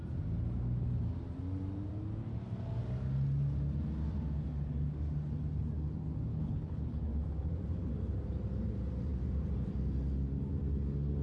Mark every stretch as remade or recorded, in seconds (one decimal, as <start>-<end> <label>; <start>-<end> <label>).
0.0-6.3 recorded; 6.3-7.1 remade; 7.1-11.2 recorded